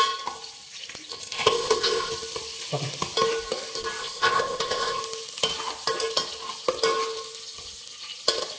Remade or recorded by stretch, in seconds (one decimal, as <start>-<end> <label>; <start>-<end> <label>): 0.0-1.1 recorded; 1.1-2.1 remade; 2.1-4.0 recorded; 4.0-5.0 remade; 5.0-8.6 recorded